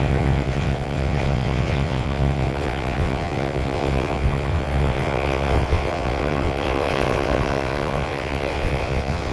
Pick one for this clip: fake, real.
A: fake